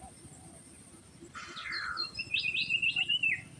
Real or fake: fake